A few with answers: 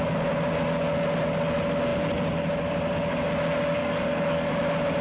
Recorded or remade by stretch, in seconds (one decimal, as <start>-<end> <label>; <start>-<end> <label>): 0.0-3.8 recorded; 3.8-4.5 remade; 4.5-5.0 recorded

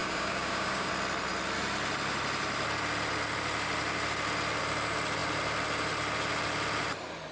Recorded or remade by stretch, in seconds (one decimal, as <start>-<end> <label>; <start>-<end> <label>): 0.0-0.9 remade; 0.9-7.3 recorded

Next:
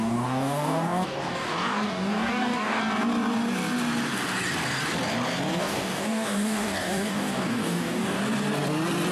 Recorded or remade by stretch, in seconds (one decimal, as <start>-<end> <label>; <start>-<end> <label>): 0.0-2.8 remade; 2.8-5.6 recorded; 5.6-8.2 remade; 8.2-9.1 recorded

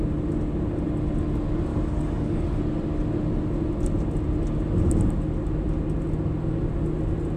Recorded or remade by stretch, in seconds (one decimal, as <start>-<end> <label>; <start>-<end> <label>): 0.0-1.7 recorded; 1.7-2.6 remade; 2.6-7.4 recorded

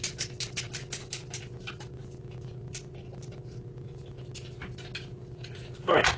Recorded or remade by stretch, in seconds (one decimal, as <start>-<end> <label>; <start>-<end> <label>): 0.0-6.2 recorded

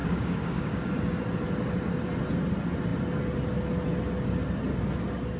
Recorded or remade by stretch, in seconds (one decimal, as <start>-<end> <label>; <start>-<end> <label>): 0.0-0.9 remade; 0.9-5.4 recorded

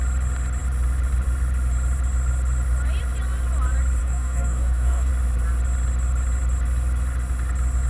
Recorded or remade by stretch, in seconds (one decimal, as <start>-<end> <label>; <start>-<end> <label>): 0.0-4.0 recorded; 4.0-5.1 remade; 5.1-7.9 recorded

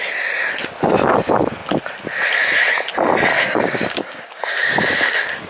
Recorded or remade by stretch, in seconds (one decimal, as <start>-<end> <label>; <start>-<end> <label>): 0.0-3.3 recorded; 3.3-5.5 remade